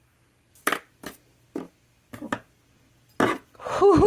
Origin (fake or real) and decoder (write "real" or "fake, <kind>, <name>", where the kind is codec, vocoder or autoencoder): real